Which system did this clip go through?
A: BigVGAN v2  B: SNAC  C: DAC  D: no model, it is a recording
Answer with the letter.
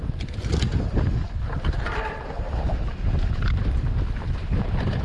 D